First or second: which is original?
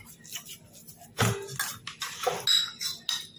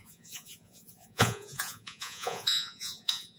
first